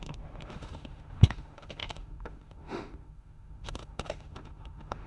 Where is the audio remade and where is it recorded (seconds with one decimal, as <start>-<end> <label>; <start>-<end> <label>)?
0.0-5.1 remade

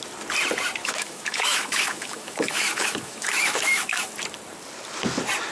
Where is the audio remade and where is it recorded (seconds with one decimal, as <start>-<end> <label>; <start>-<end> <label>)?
0.0-0.8 recorded; 0.8-4.1 remade; 4.1-5.5 recorded

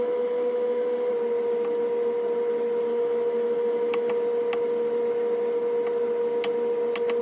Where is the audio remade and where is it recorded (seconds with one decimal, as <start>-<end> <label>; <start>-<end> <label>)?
0.0-1.1 remade; 1.1-2.9 recorded; 2.9-4.1 remade; 4.1-7.2 recorded

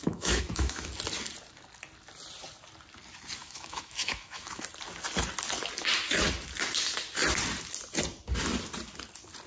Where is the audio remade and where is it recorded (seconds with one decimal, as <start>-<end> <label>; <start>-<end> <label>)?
0.0-0.9 remade; 0.9-3.4 recorded; 3.4-4.6 remade; 4.6-9.5 recorded

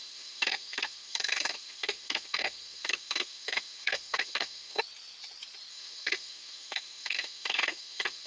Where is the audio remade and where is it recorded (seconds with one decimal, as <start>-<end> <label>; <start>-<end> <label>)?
0.0-4.8 remade; 4.8-5.7 recorded; 5.7-8.3 remade

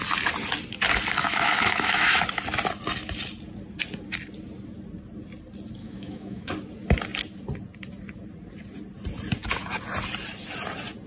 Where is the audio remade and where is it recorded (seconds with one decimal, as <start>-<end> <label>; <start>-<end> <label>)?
0.0-1.2 recorded; 1.2-2.2 remade; 2.2-5.8 recorded; 5.8-6.5 remade; 6.5-11.1 recorded

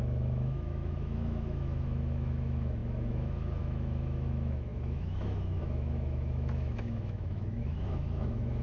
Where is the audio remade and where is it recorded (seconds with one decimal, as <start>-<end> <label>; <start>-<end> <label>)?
0.0-8.6 remade

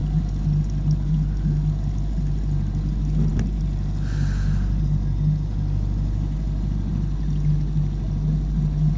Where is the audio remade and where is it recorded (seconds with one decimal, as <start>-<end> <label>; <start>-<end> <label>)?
0.0-9.0 recorded